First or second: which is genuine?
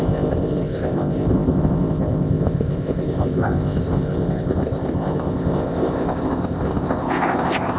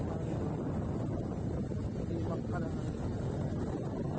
second